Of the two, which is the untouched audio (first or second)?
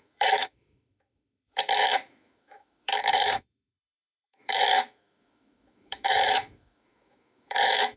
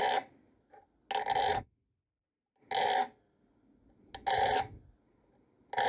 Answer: second